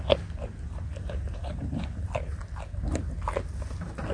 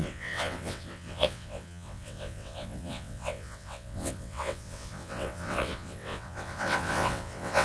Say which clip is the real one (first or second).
first